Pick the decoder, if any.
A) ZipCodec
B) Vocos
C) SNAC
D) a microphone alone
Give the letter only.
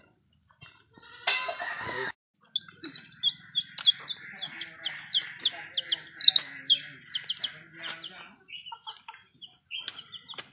D